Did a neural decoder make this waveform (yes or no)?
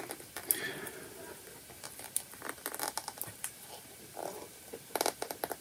no